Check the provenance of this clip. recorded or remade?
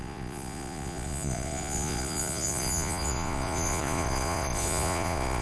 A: remade